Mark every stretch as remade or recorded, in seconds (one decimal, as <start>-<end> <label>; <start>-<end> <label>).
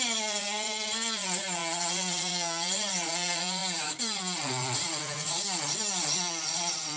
0.0-7.0 remade